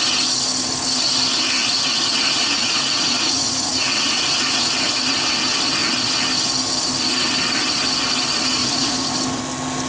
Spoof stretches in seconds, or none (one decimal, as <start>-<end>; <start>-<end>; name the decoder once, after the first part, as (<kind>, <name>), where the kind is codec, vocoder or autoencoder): 1.6-5.2 (vocoder, Vocos); 8.6-9.1